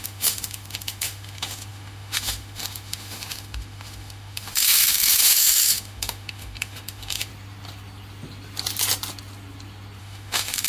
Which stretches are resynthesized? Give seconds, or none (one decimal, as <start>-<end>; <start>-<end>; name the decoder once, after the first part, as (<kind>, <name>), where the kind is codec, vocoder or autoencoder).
0.0-7.3 (autoencoder, DAC-VAE); 10.0-10.7